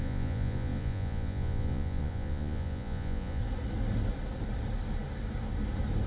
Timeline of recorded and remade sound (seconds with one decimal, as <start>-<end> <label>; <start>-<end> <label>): 0.0-3.4 remade; 3.4-6.1 recorded